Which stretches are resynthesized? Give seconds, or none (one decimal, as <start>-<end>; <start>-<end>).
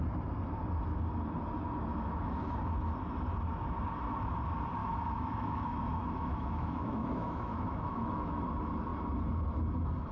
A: 1.9-2.4; 4.8-8.4